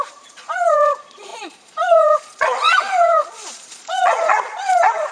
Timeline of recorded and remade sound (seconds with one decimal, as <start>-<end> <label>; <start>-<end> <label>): 0.0-5.1 remade